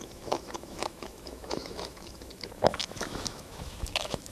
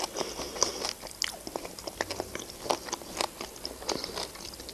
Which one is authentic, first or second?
second